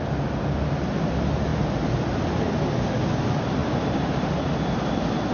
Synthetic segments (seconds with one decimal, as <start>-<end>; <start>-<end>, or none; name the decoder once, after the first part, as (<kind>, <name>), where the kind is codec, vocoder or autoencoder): 3.6-4.5 (vocoder, BigVGAN v2)